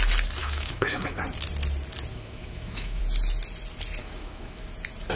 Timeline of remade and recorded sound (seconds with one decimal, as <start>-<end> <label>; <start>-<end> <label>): 0.0-0.4 recorded; 0.4-1.2 remade; 1.2-2.1 recorded; 2.1-3.0 remade; 3.0-4.0 recorded; 4.0-4.6 remade; 4.6-5.2 recorded